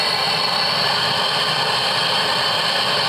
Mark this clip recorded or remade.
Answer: recorded